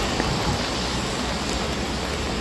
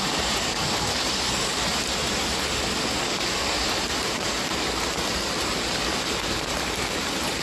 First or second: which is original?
first